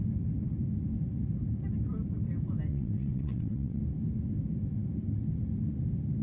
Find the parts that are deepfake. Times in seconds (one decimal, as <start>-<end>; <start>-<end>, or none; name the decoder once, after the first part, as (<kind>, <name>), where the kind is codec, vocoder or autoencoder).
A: 2.7-3.8 (vocoder, WaveNeXt)